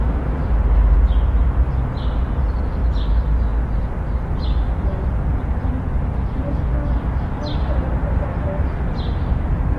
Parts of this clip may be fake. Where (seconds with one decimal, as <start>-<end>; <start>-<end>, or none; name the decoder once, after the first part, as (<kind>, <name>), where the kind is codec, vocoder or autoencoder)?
none